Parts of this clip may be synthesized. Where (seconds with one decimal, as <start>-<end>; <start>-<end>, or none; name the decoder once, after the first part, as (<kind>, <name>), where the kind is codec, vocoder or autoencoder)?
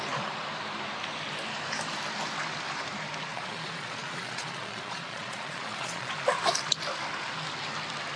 3.3-6.1 (vocoder, Vocos)